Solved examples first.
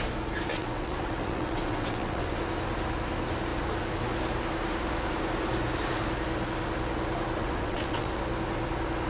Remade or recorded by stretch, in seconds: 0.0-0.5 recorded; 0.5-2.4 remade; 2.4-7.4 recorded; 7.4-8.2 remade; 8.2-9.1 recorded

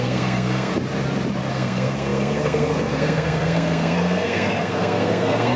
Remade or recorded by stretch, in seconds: 0.0-0.7 remade; 0.7-1.5 recorded; 1.5-5.6 remade

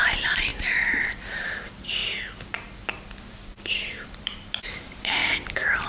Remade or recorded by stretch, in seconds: 0.0-2.0 remade; 2.0-3.7 recorded; 3.7-5.2 remade; 5.2-5.9 recorded

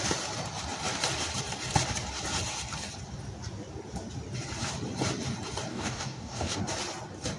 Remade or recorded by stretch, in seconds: 0.0-5.7 recorded; 5.7-6.6 remade; 6.6-7.4 recorded

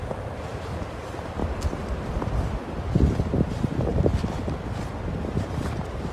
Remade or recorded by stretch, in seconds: 0.0-6.1 recorded

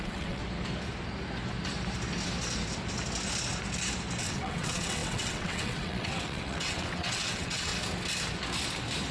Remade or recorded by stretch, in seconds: 0.0-0.4 remade; 0.4-4.2 recorded; 4.2-7.7 remade; 7.7-9.1 recorded

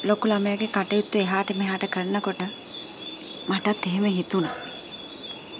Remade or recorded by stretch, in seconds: 0.0-5.6 recorded

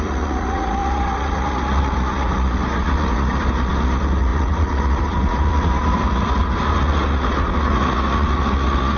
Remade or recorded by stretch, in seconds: 0.0-9.0 remade